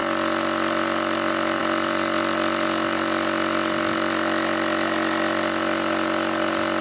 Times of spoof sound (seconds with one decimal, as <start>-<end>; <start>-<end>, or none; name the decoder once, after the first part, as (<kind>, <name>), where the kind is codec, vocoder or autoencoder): none